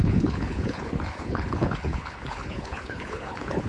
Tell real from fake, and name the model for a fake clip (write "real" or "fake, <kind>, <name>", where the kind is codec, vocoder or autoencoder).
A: fake, codec, HILCodec